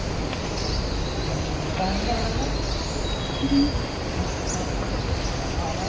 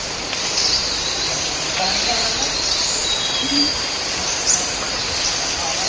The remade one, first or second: second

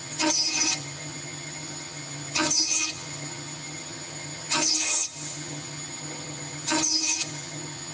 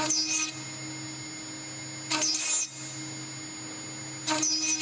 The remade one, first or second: first